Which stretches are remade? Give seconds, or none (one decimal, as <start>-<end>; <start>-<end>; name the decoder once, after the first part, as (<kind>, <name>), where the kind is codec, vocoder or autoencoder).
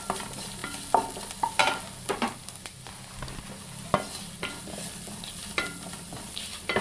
none